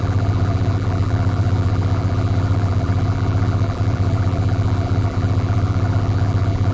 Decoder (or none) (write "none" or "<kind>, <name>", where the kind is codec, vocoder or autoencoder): vocoder, BigVGAN v2